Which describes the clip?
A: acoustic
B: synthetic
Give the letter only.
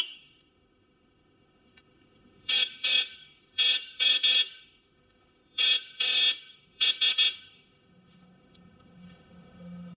B